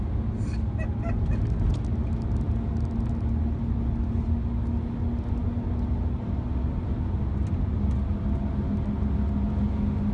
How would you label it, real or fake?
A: real